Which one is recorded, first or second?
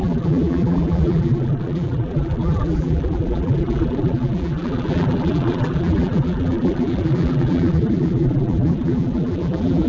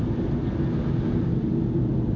second